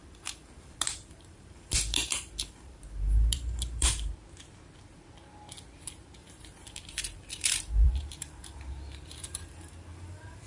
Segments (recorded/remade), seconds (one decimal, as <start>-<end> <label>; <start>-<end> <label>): 0.0-4.1 remade; 4.1-6.2 recorded; 6.2-10.5 remade